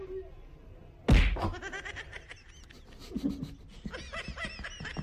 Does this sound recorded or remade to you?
recorded